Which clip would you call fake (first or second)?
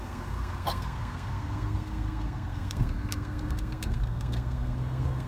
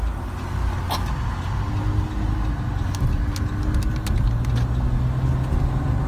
first